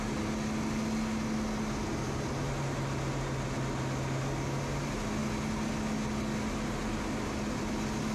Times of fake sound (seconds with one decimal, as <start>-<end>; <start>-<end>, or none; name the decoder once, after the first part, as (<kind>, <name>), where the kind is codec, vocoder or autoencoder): none